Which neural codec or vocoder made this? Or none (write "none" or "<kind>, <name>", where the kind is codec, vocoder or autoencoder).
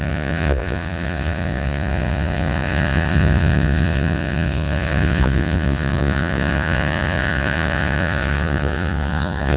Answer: vocoder, Vocos